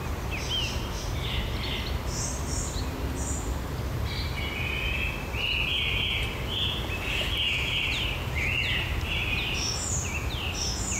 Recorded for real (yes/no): yes